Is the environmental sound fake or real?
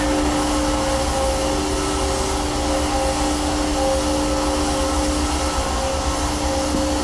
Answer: real